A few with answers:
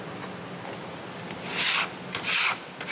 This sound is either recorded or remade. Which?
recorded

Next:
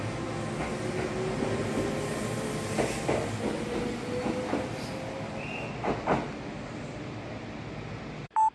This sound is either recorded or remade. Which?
recorded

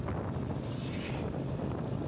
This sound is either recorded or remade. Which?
recorded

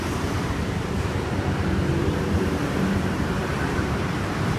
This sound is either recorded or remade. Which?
remade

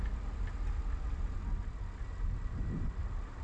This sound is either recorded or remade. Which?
recorded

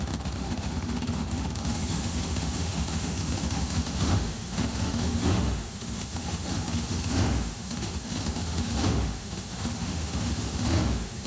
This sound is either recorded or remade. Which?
remade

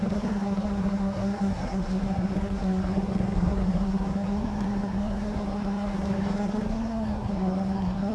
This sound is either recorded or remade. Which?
remade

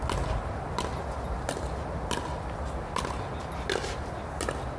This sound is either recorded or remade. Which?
recorded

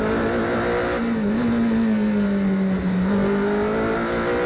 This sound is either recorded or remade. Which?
recorded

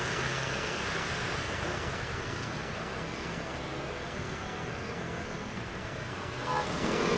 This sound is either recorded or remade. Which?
remade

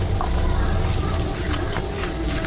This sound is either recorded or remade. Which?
recorded